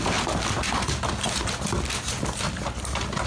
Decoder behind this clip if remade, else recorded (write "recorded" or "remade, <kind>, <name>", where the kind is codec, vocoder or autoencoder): recorded